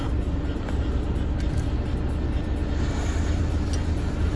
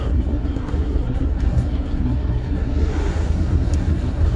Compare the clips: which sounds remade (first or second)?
second